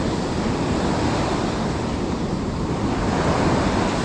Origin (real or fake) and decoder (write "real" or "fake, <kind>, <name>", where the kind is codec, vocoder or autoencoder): real